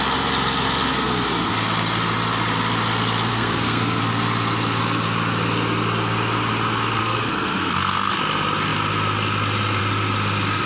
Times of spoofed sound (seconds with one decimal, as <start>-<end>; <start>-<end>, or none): 3.3-4.0; 7.0-8.2